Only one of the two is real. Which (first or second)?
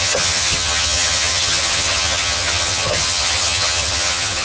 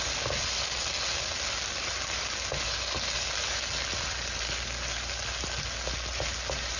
second